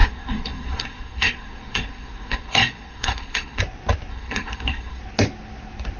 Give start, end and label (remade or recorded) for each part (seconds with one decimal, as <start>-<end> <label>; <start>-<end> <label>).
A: 0.0-3.6 remade; 3.6-4.1 recorded; 4.1-5.0 remade; 5.0-6.0 recorded